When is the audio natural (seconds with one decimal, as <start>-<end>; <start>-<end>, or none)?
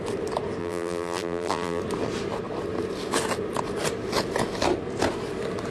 0.0-0.6; 1.8-5.7